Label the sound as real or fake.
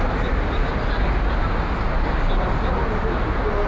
real